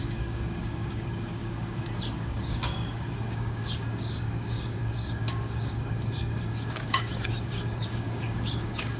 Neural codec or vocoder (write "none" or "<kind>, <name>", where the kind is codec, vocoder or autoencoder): codec, DAC